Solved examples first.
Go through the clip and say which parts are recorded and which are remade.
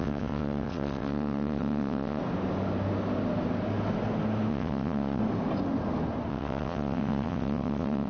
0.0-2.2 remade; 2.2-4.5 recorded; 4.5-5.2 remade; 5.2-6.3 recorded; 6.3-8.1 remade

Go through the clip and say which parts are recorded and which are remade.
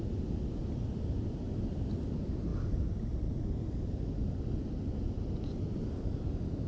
0.0-6.7 recorded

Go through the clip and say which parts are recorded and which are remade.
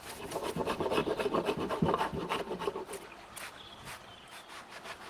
0.0-5.1 recorded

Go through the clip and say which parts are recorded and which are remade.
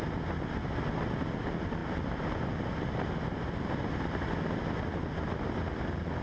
0.0-6.2 recorded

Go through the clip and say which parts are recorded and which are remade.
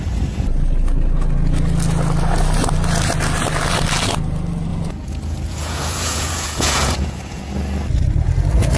0.0-4.7 recorded; 4.7-7.4 remade; 7.4-8.8 recorded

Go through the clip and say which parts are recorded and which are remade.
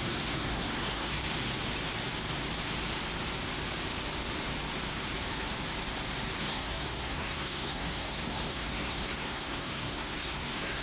0.0-1.2 remade; 1.2-6.4 recorded; 6.4-10.8 remade